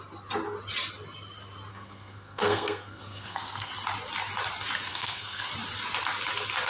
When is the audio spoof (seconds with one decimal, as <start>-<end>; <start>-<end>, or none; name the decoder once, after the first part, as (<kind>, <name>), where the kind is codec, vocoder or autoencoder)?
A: 1.7-3.7 (codec, SNAC); 4.9-5.5